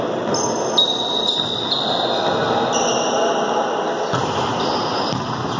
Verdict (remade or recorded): recorded